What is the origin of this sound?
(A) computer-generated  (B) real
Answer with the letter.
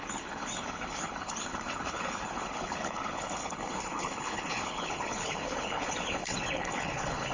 A